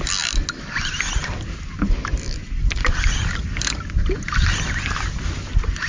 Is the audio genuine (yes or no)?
yes